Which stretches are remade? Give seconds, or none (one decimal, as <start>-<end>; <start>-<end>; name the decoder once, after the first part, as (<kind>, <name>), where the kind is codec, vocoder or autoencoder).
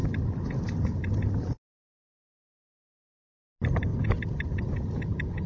none